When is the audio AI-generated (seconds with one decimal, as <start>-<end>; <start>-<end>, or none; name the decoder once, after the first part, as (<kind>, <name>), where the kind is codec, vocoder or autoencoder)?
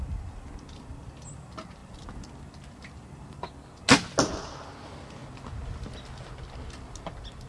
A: none